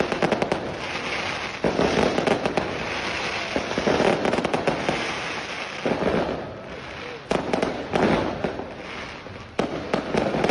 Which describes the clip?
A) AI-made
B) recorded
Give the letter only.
B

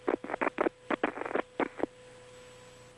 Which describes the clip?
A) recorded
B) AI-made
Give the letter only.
A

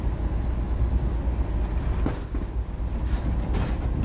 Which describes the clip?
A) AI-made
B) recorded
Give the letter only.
B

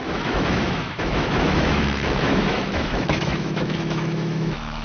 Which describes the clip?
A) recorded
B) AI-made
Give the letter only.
B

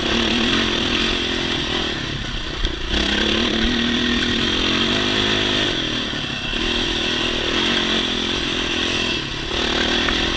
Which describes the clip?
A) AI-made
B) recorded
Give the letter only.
B